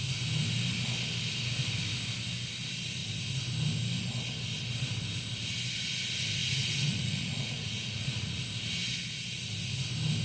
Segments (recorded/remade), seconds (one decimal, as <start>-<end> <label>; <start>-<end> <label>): 0.0-6.4 recorded; 6.4-8.4 remade; 8.4-10.2 recorded